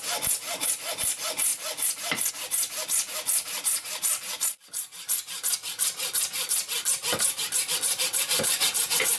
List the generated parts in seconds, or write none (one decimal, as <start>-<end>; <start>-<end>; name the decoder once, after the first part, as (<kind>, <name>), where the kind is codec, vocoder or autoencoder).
none